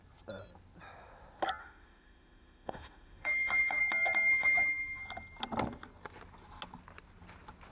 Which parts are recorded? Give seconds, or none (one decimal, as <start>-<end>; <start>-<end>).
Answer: 0.0-1.6; 3.8-4.3; 5.0-7.7